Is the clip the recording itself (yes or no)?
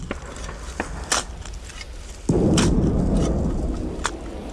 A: yes